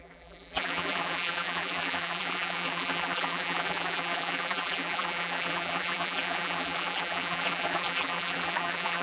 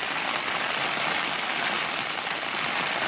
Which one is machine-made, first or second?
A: first